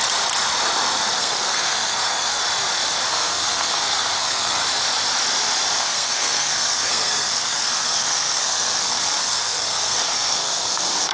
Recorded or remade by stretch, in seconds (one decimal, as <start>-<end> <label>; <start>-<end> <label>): 0.0-1.2 recorded; 1.2-2.4 remade; 2.4-3.1 recorded; 3.1-4.6 remade; 4.6-5.8 recorded; 5.8-11.1 remade